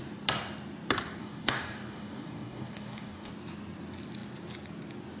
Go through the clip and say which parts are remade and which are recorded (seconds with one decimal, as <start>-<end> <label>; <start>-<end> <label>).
0.0-1.2 recorded; 1.2-3.3 remade; 3.3-5.2 recorded